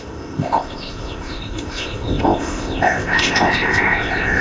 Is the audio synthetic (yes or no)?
yes